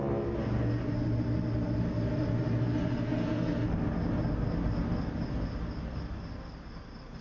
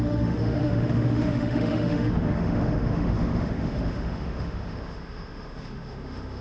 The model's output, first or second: second